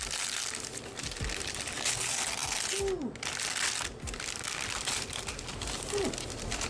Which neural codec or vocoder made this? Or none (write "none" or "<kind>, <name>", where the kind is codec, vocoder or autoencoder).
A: none